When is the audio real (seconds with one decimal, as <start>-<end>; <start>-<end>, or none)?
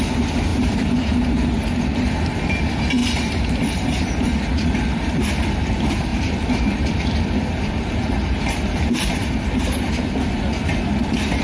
0.0-0.5; 1.4-3.0; 4.0-6.1; 10.4-11.4